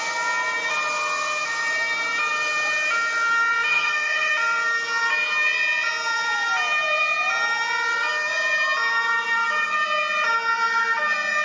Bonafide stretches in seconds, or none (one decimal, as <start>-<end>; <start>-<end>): 0.0-3.7; 4.3-11.4